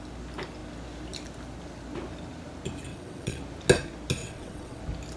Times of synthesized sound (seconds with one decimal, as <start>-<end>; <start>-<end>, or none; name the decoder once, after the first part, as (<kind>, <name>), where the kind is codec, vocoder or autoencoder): 2.9-3.4 (vocoder, WaveNeXt); 4.2-4.8